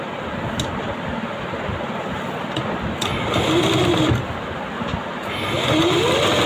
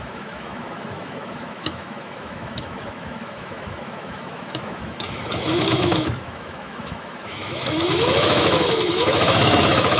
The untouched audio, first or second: first